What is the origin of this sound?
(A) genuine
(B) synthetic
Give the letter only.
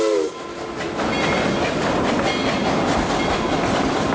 A